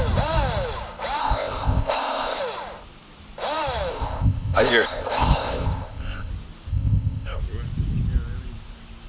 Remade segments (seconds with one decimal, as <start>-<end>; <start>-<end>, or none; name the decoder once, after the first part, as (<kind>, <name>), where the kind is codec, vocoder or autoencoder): 1.2-2.4 (codec, ZipCodec); 3.9-6.3; 6.7-7.4